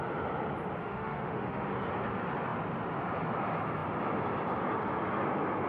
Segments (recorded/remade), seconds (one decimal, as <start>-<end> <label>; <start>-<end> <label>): 0.0-0.8 recorded; 0.8-1.9 remade; 1.9-5.7 recorded